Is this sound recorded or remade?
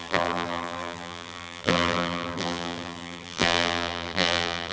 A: remade